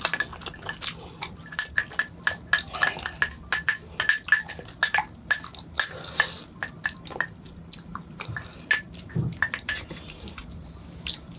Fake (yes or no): no